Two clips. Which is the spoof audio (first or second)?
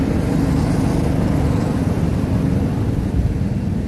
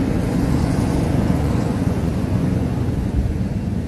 second